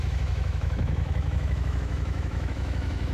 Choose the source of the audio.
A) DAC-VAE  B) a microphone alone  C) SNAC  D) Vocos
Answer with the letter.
A